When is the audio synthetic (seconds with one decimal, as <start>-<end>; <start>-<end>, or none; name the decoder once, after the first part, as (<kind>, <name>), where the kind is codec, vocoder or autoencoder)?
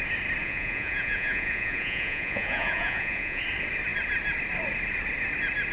0.4-3.4 (vocoder, Vocos)